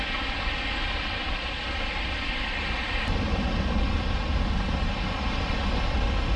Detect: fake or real real